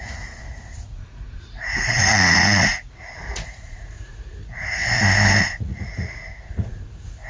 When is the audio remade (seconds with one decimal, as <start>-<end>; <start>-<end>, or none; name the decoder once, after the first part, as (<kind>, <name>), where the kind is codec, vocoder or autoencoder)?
0.0-4.8 (vocoder, Vocos); 5.4-7.3